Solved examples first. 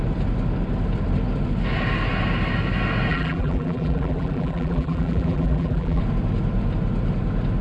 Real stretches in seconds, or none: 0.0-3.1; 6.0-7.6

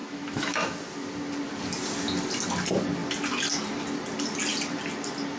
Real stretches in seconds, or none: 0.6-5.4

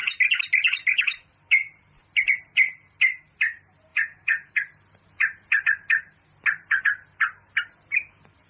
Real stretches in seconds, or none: 0.0-3.9; 4.5-8.5